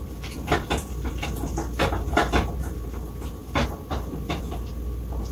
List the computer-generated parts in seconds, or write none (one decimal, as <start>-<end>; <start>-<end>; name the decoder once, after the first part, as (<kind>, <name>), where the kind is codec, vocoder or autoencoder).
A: none